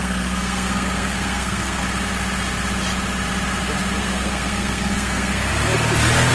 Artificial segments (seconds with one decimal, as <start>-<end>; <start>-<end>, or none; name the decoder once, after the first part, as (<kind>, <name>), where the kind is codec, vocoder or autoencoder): 0.0-1.8 (codec, SNAC); 4.0-5.5